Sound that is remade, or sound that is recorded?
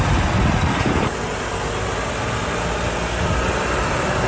recorded